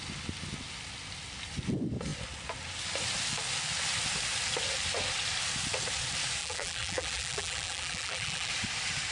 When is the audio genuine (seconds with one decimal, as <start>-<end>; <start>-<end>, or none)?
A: 0.0-6.4; 8.5-9.1